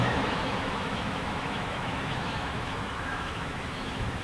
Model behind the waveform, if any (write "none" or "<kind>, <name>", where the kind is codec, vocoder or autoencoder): autoencoder, DAC-VAE